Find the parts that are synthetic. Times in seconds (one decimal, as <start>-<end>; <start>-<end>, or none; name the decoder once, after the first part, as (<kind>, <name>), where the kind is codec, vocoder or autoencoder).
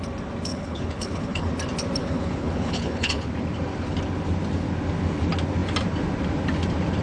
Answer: 0.5-1.5 (codec, HILCodec); 2.0-3.3